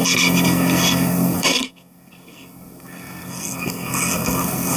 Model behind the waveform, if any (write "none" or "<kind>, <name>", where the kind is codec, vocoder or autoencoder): codec, SNAC